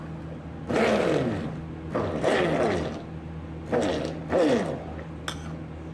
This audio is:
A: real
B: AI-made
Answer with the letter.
A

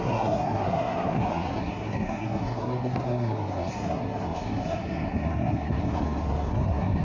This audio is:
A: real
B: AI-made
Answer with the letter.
B